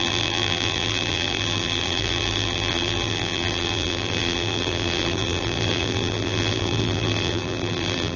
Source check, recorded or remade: remade